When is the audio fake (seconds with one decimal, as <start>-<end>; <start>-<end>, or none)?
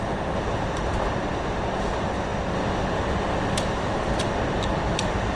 none